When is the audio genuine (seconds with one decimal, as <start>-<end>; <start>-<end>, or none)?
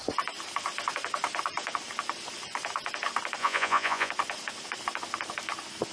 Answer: 0.0-3.4; 4.1-5.9